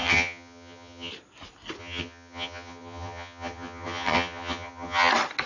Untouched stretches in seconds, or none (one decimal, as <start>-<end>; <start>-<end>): 1.1-1.8; 5.1-5.5